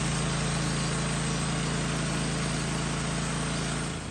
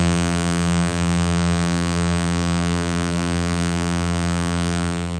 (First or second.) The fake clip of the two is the second